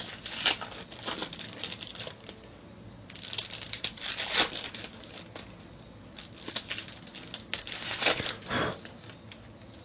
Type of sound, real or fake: real